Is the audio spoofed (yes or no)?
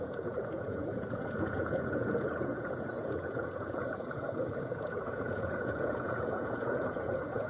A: yes